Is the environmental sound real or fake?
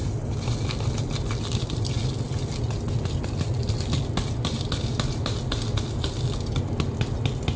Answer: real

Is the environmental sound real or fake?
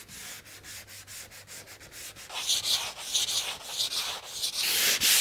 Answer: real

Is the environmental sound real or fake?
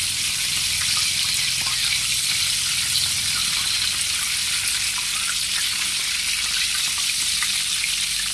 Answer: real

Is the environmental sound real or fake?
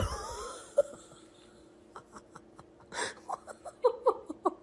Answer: real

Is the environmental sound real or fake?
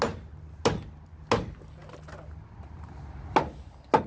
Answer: real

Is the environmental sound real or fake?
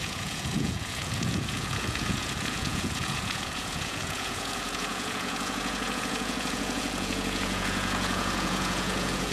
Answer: fake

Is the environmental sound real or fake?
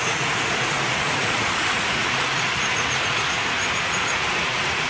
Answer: fake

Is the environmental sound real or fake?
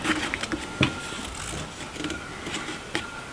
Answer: real